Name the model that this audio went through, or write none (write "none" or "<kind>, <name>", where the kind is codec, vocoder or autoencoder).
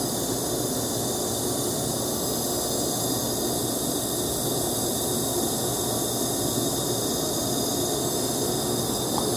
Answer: none